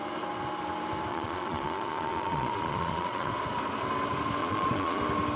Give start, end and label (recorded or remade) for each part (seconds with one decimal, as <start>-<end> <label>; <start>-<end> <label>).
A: 0.0-1.1 recorded; 1.1-3.3 remade; 3.3-4.4 recorded; 4.4-5.0 remade; 5.0-5.4 recorded